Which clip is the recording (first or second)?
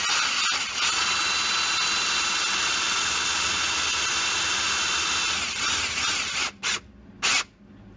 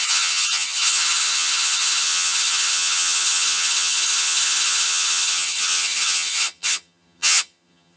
first